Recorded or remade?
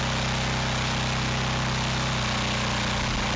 recorded